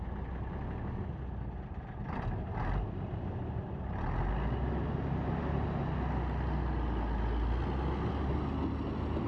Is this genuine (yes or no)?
yes